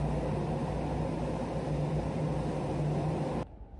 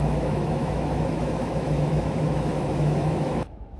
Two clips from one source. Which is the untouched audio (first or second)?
first